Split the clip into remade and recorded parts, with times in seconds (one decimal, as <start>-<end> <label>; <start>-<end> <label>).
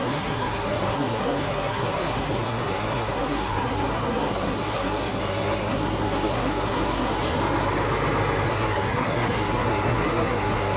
0.0-7.4 remade; 7.4-8.5 recorded; 8.5-10.8 remade